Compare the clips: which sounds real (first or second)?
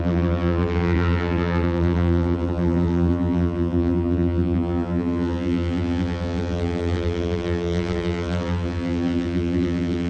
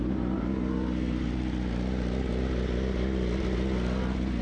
second